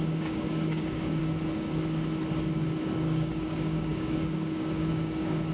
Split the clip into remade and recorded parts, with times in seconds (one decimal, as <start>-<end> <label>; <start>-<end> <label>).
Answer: 0.0-1.2 remade; 1.2-2.8 recorded; 2.8-5.5 remade